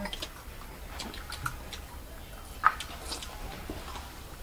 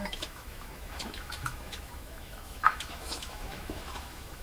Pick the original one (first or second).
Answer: first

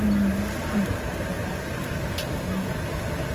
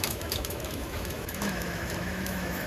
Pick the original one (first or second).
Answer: first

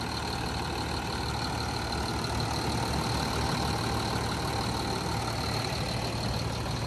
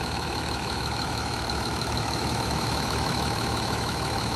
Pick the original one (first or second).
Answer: first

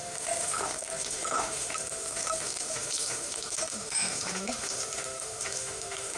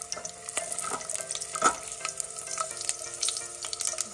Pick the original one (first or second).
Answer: second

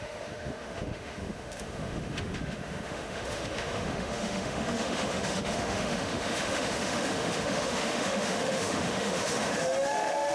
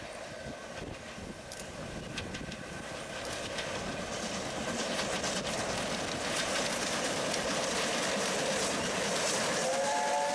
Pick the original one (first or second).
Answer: second